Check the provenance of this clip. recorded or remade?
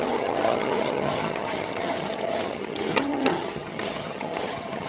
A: remade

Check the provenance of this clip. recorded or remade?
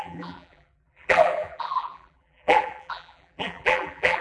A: remade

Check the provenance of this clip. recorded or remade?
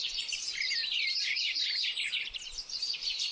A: remade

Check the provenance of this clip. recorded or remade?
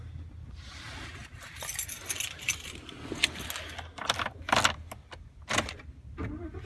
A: recorded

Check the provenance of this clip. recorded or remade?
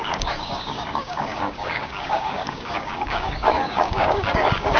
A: remade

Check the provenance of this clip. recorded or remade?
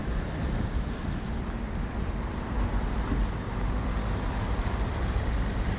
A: remade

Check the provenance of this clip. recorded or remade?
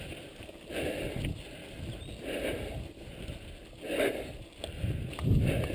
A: recorded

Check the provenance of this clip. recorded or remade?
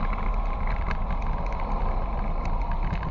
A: recorded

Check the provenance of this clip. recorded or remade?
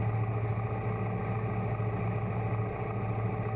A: recorded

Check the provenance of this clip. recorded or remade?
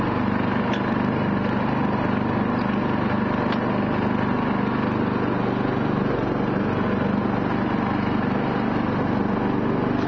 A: recorded